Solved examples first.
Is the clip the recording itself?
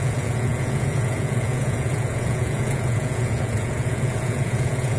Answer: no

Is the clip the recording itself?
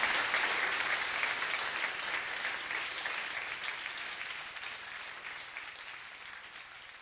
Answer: no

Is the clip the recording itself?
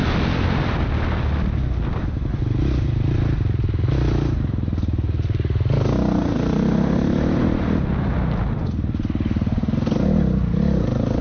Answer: yes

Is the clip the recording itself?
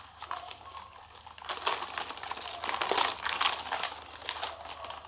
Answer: yes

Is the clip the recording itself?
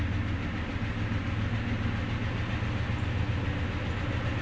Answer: yes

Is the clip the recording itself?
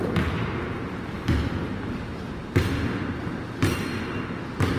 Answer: yes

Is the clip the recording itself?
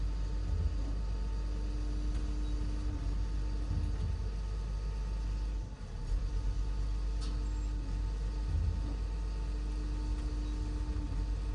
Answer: yes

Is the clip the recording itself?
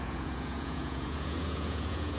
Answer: no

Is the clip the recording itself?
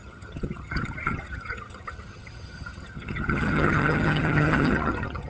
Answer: no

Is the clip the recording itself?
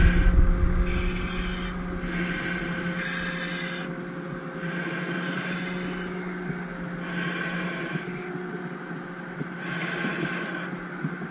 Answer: yes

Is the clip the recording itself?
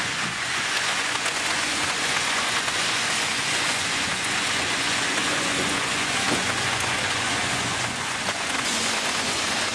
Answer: no